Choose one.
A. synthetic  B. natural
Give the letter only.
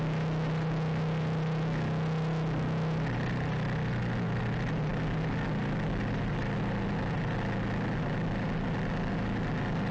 B